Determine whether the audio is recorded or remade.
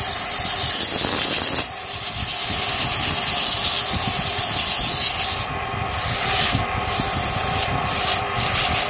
recorded